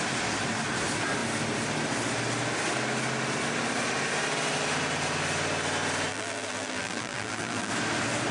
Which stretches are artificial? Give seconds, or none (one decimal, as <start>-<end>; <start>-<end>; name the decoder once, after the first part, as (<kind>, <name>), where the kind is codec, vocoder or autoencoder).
6.1-7.7 (vocoder, BigVGAN v2)